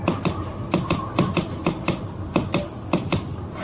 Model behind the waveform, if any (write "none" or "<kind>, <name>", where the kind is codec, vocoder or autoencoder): none